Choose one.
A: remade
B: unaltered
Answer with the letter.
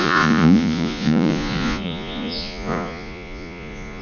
A